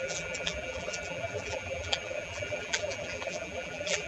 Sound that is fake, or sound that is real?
fake